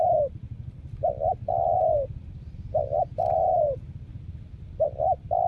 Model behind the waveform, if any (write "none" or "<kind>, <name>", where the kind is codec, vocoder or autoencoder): none